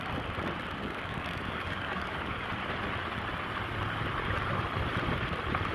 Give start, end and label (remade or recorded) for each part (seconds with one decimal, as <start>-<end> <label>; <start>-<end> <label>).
0.0-0.8 recorded; 0.8-2.4 remade; 2.4-5.7 recorded